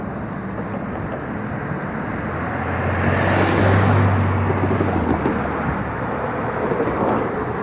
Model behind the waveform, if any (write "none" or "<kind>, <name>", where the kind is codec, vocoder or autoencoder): none